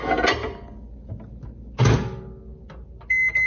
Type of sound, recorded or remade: recorded